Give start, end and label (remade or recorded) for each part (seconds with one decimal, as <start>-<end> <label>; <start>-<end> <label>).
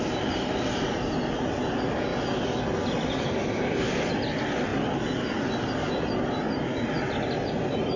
0.0-2.1 recorded; 2.1-4.0 remade; 4.0-4.7 recorded; 4.7-5.9 remade; 5.9-8.0 recorded